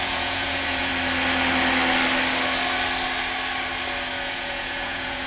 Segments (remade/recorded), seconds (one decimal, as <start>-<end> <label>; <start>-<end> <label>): 0.0-0.9 remade; 0.9-4.1 recorded; 4.1-5.3 remade